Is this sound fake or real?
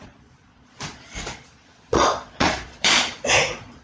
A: fake